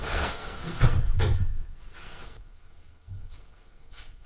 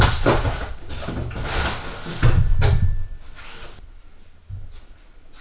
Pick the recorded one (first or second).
second